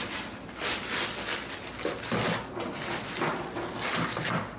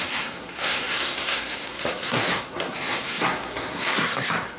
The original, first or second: first